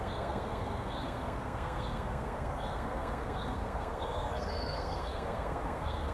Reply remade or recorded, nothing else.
remade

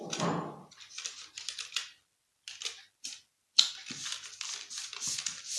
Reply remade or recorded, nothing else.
recorded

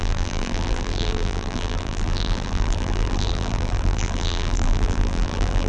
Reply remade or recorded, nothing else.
remade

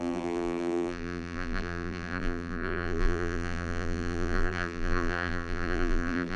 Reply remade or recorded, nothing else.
remade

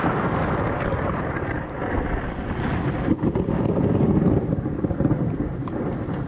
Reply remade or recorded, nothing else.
recorded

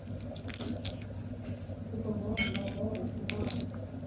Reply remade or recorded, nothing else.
recorded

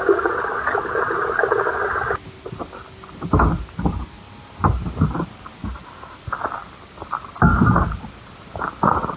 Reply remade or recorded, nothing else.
recorded